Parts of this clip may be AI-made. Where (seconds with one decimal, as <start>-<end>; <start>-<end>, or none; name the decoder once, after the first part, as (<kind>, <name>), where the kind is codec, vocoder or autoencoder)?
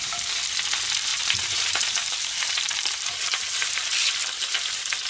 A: 1.1-4.1 (vocoder, BigVGAN v2)